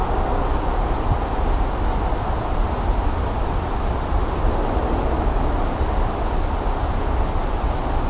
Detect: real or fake real